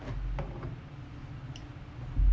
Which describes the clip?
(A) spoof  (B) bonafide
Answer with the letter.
B